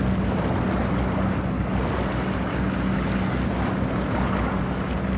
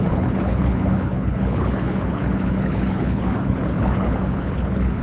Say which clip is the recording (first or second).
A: first